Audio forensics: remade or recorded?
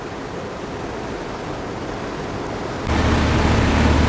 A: recorded